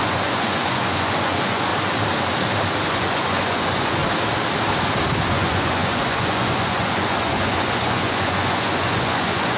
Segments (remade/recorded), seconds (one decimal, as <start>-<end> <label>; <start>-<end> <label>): 0.0-1.7 remade; 1.7-2.9 recorded; 2.9-4.0 remade; 4.0-5.3 recorded; 5.3-9.6 remade